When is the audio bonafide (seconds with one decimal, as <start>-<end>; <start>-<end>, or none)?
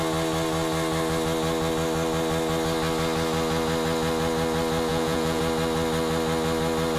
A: 0.0-4.9; 5.4-7.0